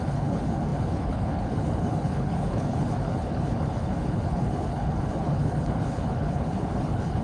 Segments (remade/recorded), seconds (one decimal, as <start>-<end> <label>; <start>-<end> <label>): 0.0-7.2 remade